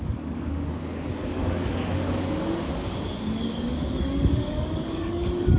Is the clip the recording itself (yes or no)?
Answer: no